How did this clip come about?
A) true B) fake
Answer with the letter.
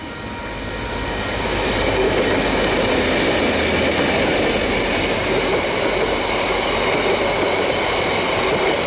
A